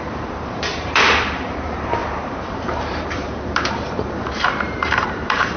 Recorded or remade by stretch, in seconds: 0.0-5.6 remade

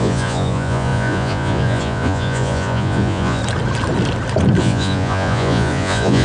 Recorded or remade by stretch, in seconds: 0.0-3.4 remade; 3.4-4.6 recorded; 4.6-6.2 remade

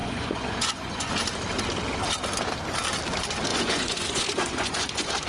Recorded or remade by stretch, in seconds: 0.0-1.1 remade; 1.1-3.5 recorded; 3.5-5.3 remade